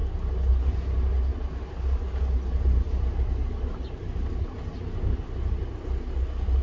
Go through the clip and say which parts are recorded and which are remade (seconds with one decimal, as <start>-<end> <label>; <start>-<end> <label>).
0.0-6.6 recorded